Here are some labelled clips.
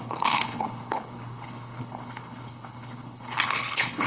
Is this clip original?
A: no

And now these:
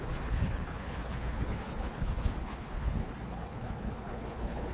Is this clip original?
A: no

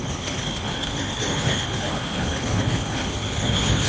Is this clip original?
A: no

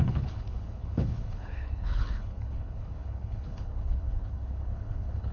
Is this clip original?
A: no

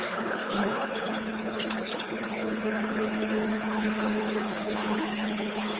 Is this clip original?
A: no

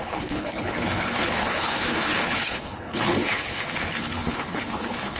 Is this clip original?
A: no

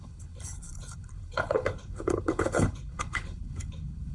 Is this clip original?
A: no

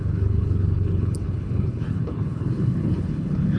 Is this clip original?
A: no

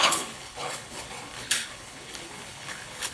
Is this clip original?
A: no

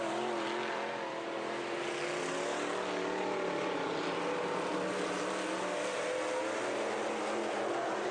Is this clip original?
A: yes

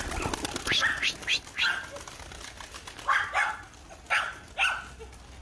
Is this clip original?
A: yes